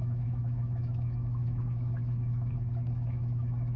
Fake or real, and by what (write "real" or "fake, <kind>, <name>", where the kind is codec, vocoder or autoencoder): fake, autoencoder, DAC-VAE